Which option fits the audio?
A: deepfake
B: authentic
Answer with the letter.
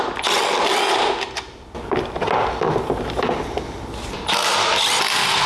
B